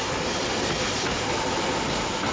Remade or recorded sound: recorded